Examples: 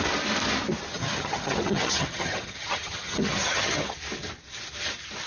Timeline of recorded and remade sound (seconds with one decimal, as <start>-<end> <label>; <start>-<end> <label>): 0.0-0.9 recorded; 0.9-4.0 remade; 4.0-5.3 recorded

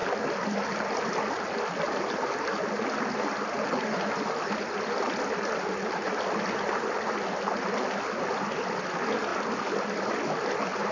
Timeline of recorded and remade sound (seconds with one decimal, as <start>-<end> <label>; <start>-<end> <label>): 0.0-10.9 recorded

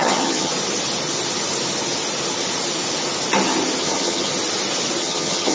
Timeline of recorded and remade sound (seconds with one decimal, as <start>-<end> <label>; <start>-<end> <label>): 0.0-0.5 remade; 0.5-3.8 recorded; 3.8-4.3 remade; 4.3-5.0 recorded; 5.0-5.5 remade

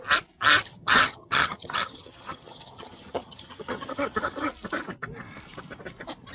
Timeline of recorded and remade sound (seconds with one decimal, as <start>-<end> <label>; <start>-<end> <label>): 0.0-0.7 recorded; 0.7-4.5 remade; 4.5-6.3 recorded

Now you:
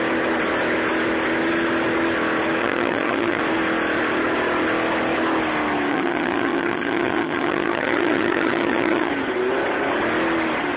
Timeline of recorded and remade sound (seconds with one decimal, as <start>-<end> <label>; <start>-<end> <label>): 0.0-2.6 recorded; 2.6-3.4 remade; 3.4-5.9 recorded; 5.9-9.1 remade; 9.1-10.8 recorded

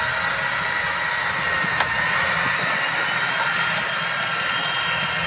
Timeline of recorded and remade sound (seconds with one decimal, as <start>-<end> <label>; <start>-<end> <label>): 0.0-5.3 recorded

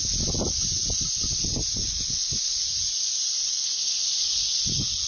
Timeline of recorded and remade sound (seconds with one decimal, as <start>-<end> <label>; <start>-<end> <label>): 0.0-5.1 recorded